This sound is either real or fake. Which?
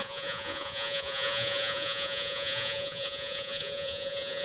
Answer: fake